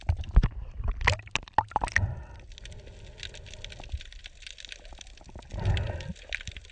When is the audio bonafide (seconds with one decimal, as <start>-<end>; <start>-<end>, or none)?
0.0-6.7